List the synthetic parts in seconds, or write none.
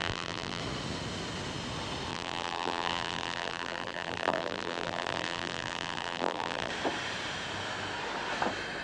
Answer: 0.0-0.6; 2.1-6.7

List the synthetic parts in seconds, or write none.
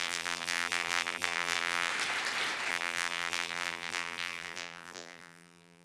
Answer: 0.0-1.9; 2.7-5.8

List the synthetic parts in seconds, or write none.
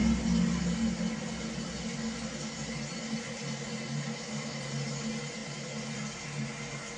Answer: 3.0-3.7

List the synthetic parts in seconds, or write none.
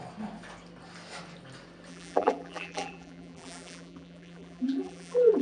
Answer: 1.9-5.4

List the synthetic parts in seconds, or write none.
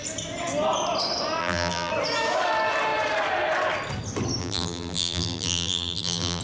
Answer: 1.4-1.9; 4.4-6.4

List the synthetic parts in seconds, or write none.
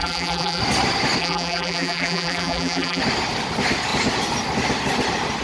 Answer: 0.0-0.6; 1.2-3.0